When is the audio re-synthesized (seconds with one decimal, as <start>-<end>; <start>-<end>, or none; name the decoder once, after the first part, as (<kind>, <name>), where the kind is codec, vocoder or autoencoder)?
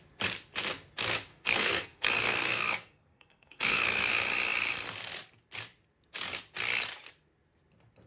1.3-4.1 (codec, SNAC)